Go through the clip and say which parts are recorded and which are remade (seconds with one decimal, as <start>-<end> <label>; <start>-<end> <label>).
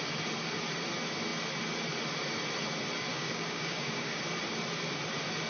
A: 0.0-3.1 recorded; 3.1-4.2 remade; 4.2-5.5 recorded